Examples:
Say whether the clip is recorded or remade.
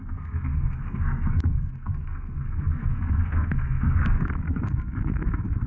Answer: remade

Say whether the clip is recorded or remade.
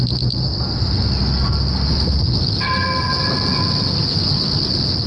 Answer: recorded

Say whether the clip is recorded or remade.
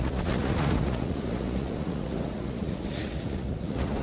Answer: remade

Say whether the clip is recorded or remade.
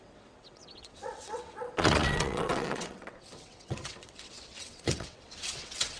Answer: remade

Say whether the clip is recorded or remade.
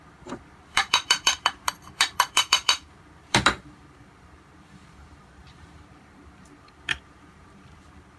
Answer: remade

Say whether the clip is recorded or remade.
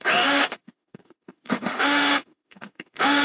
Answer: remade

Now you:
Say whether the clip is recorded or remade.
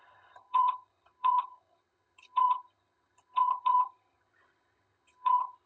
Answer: remade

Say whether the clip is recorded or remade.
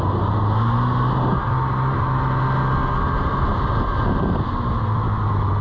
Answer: recorded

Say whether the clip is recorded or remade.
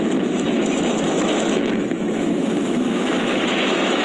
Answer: remade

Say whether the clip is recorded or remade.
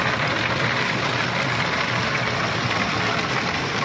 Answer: recorded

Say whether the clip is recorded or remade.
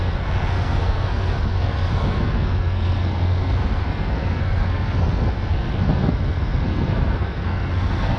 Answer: remade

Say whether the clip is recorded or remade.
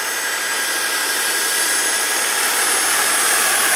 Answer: recorded